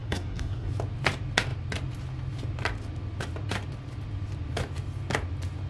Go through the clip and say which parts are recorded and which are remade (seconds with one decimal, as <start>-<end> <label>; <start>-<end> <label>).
0.0-0.7 remade; 0.7-5.7 recorded

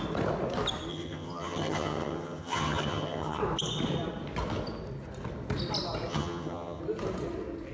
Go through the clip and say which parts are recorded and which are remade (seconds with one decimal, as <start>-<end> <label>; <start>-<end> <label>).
0.0-0.9 recorded; 0.9-3.4 remade; 3.4-6.1 recorded; 6.1-6.8 remade; 6.8-7.7 recorded

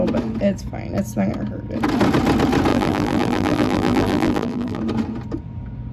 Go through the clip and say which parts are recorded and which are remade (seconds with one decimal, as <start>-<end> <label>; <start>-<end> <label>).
0.0-2.7 recorded; 2.7-4.8 remade; 4.8-5.9 recorded

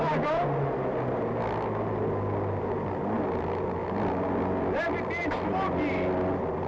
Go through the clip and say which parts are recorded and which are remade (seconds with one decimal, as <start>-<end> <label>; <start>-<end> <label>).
0.0-6.7 recorded

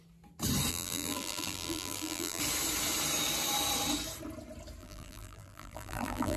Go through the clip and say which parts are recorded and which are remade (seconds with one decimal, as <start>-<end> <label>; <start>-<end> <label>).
0.0-0.7 recorded; 0.7-2.4 remade; 2.4-4.8 recorded; 4.8-6.4 remade

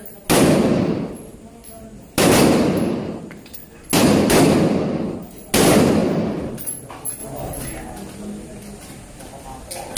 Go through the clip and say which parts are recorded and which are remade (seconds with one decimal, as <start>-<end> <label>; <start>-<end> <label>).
0.0-10.0 recorded

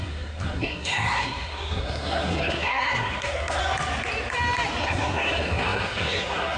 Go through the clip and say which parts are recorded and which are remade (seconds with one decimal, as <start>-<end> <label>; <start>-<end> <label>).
0.0-3.6 remade; 3.6-4.8 recorded; 4.8-6.6 remade

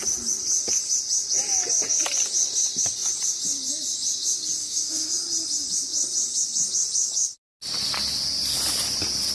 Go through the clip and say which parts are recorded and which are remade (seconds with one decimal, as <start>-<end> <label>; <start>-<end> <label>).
0.0-4.6 recorded; 4.6-5.1 remade; 5.1-9.3 recorded